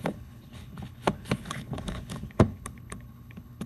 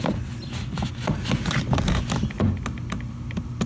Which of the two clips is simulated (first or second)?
first